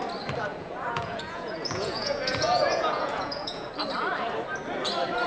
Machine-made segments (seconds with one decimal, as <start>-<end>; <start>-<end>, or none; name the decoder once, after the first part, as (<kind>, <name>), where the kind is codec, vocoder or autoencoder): 0.5-3.7 (vocoder, Vocos)